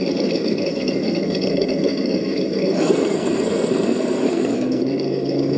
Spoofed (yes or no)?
yes